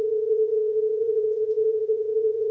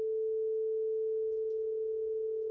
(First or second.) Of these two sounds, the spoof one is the first